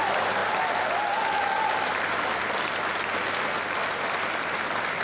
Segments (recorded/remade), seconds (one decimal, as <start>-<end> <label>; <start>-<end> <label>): 0.0-3.8 recorded; 3.8-5.0 remade